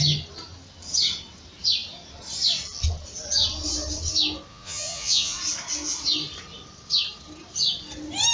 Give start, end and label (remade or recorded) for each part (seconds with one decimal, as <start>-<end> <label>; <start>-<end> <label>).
0.0-4.5 recorded; 4.5-5.4 remade; 5.4-8.3 recorded